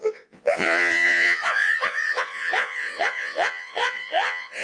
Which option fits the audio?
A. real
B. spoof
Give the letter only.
B